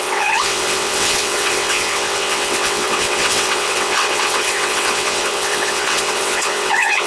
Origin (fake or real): fake